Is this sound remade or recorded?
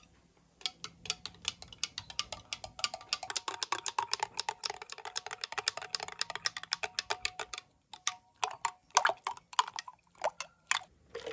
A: recorded